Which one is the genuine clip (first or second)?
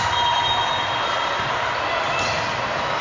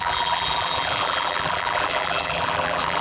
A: first